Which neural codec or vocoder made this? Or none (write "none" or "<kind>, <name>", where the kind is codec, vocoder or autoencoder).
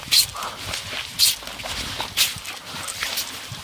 none